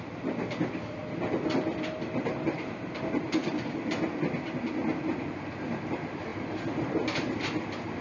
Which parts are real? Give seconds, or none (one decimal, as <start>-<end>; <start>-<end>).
1.0-2.3; 3.4-5.6